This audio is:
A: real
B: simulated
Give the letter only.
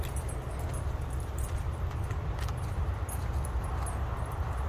A